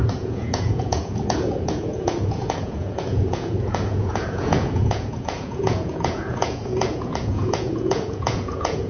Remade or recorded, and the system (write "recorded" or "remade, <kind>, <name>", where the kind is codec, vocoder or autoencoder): remade, vocoder, Vocos